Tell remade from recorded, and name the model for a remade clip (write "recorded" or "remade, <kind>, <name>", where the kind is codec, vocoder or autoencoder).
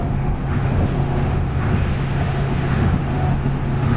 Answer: remade, autoencoder, DAC-VAE